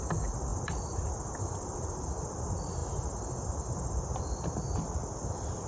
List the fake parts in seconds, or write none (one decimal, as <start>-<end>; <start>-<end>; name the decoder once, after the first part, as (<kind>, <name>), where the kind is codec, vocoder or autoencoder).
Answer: none